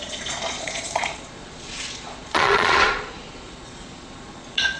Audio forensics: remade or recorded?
remade